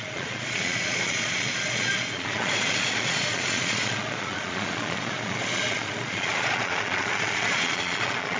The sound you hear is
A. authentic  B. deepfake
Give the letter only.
B